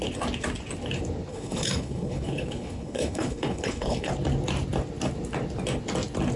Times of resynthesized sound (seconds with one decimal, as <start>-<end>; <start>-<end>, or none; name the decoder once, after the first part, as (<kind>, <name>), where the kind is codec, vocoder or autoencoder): 1.3-4.1 (codec, HILCodec)